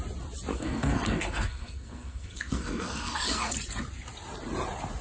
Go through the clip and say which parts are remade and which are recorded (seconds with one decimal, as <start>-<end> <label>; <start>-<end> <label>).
0.0-0.5 recorded; 0.5-3.5 remade; 3.5-5.0 recorded